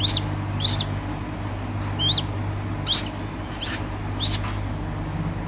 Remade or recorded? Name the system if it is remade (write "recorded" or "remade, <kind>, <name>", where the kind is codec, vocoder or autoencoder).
recorded